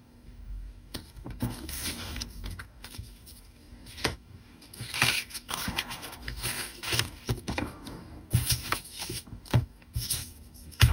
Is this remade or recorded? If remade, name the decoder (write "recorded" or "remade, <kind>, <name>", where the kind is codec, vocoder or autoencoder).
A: remade, codec, DAC